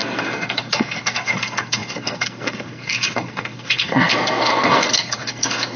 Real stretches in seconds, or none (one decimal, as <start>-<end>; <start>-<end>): none